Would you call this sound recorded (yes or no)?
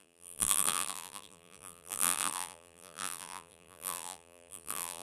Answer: no